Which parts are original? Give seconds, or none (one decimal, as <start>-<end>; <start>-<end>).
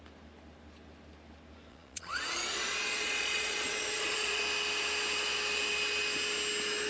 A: 0.0-1.7; 4.4-6.9